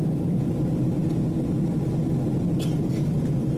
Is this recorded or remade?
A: recorded